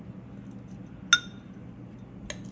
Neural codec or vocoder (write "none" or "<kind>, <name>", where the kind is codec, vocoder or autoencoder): none